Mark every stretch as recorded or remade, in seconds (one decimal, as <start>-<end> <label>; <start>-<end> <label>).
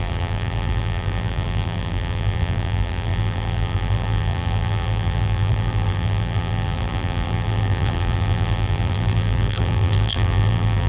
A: 0.0-10.9 remade